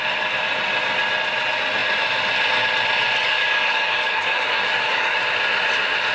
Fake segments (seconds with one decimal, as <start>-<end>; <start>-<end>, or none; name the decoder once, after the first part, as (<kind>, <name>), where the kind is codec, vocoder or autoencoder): 3.2-5.2 (codec, DAC)